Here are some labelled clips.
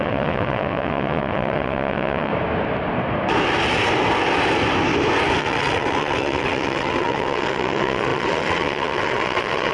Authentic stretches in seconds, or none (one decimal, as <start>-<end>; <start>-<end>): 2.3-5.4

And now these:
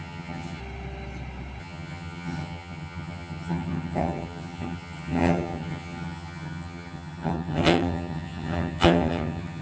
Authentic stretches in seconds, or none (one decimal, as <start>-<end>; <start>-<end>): 0.6-1.6

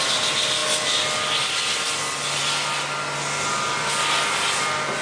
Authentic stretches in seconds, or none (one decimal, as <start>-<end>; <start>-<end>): 0.0-5.0

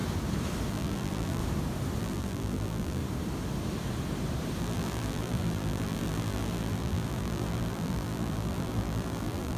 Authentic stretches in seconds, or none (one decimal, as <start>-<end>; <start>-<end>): 0.0-0.7; 1.4-2.0; 3.0-4.6

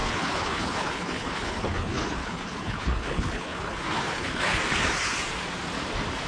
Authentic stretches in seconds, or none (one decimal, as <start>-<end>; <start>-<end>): 4.6-6.3